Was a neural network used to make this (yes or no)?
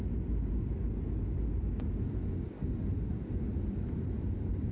no